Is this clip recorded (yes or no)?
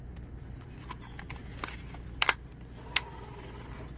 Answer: yes